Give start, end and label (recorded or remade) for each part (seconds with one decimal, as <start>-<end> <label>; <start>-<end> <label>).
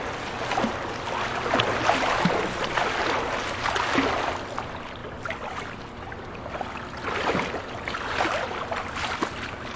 0.0-9.8 recorded